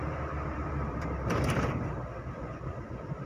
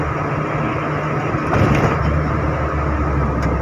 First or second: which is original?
second